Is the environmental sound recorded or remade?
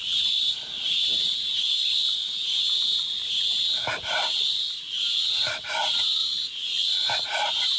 recorded